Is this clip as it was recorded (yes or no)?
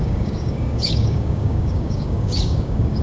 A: no